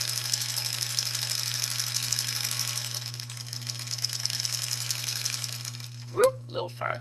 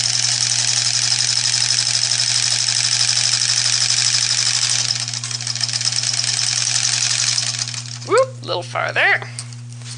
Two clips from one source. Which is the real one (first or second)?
second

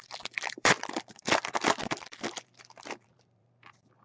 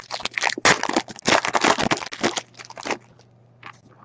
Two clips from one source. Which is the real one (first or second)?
second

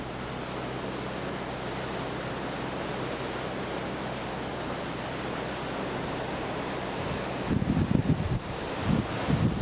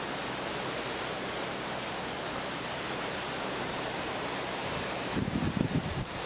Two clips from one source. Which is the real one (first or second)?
first